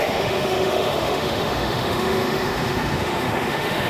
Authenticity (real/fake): fake